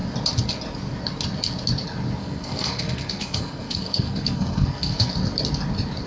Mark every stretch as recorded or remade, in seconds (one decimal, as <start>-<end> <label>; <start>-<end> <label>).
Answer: 0.0-2.2 recorded; 2.2-5.1 remade; 5.1-6.1 recorded